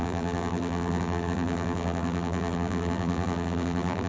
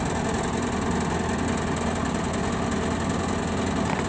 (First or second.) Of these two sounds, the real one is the second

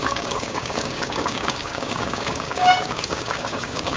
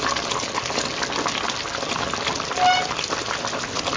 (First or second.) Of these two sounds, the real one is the second